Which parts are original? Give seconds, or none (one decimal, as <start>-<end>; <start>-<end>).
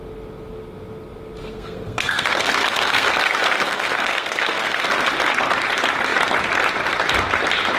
0.0-1.4; 5.1-7.8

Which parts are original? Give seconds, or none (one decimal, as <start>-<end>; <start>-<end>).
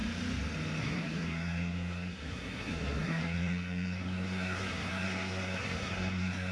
0.0-0.8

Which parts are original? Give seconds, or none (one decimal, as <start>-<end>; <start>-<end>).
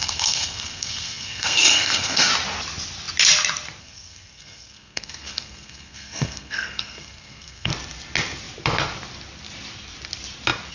2.3-3.8; 7.7-10.7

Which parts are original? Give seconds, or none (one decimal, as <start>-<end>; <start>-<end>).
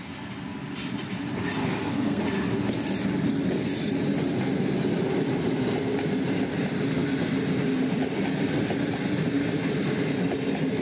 0.0-1.6; 2.2-10.8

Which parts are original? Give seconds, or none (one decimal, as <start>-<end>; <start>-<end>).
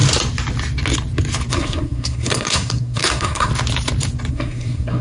0.0-1.5; 3.5-4.3